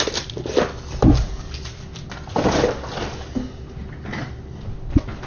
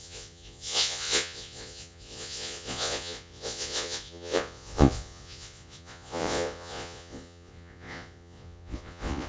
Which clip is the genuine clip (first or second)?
first